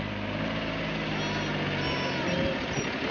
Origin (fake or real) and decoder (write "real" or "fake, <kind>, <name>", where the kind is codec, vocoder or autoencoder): real